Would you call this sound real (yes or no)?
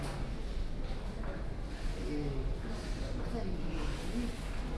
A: yes